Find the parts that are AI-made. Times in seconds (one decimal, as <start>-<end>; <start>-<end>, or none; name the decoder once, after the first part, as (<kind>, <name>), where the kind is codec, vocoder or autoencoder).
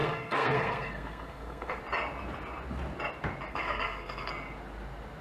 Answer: 0.0-1.8 (codec, SNAC); 3.5-4.3